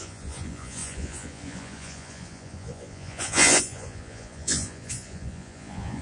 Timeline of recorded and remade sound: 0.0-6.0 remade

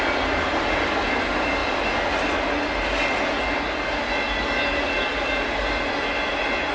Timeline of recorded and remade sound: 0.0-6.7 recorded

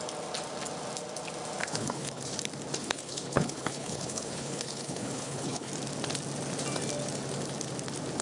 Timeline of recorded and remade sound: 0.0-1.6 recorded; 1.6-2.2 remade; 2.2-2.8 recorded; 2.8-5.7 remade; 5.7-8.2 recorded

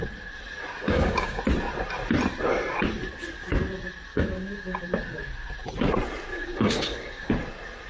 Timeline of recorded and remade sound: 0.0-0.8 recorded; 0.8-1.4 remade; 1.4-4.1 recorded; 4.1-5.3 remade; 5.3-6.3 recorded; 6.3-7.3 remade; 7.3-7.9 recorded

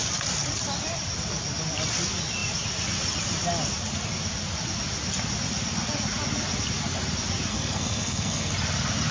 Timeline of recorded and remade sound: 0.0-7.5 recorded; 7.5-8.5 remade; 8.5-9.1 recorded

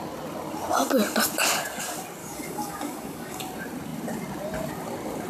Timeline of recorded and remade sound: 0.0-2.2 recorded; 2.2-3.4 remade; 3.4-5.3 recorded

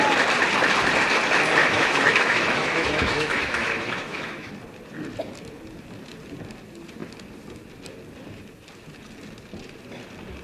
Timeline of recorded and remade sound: 0.0-1.6 recorded; 1.6-4.5 remade; 4.5-10.4 recorded

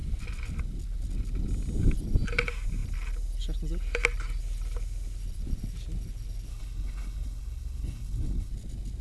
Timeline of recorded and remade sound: 0.0-6.5 recorded; 6.5-8.5 remade; 8.5-9.0 recorded